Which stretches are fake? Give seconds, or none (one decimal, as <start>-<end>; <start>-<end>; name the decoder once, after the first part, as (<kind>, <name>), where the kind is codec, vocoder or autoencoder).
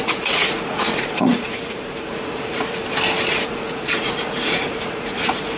0.0-2.8 (vocoder, Vocos); 3.3-5.6